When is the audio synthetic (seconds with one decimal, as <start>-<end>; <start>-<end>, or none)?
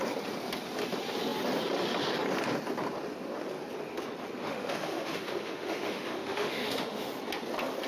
4.4-7.1